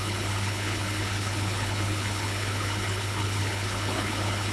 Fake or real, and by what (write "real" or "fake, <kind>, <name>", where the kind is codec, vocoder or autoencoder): fake, codec, HILCodec